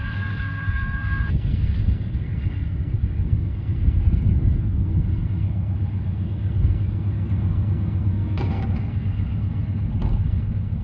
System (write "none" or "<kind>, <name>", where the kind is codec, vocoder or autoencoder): codec, SNAC